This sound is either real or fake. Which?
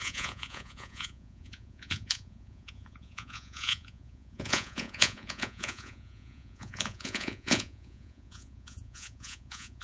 fake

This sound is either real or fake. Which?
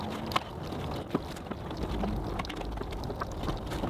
real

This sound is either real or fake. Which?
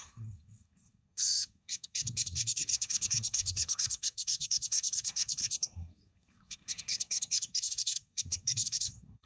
fake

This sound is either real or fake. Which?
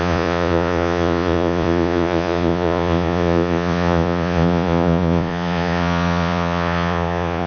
fake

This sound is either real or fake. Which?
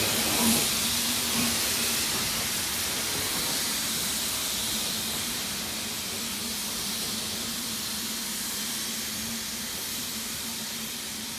fake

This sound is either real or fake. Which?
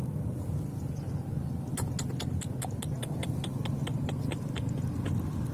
real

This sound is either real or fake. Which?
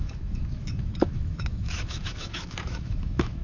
fake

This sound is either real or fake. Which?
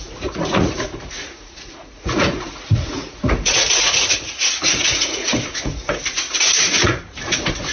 fake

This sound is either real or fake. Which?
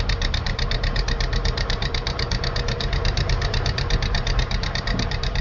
fake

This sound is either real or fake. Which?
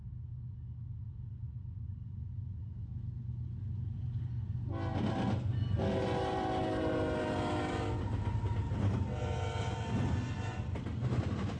real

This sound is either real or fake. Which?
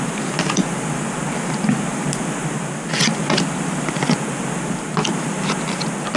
real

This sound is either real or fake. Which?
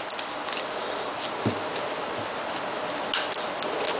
real